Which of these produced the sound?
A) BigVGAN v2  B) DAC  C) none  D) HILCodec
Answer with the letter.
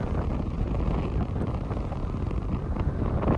C